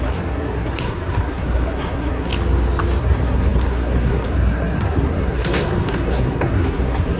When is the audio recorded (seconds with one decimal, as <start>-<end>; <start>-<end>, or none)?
2.3-3.0